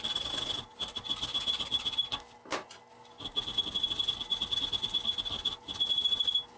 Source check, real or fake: real